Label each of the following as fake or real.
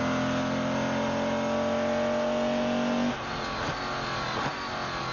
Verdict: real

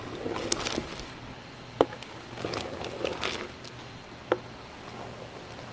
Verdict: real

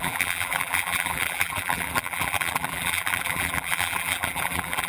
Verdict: fake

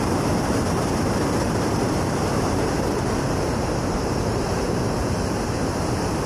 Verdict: fake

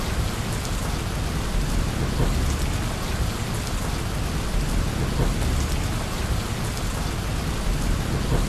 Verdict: real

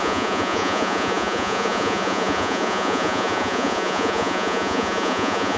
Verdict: fake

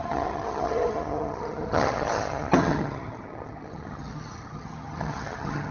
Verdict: fake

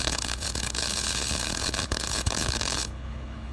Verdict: fake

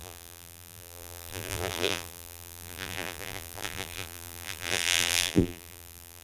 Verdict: fake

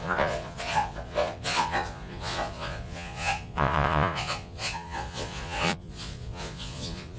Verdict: fake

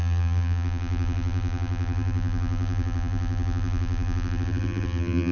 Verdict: fake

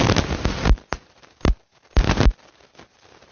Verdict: real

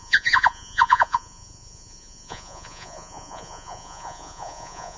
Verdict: fake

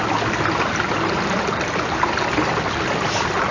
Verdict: real